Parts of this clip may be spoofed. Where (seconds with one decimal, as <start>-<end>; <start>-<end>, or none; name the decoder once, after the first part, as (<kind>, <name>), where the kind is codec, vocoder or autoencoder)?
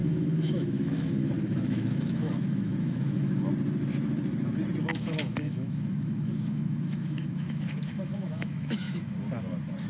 0.0-3.5 (autoencoder, DAC-VAE); 4.9-9.1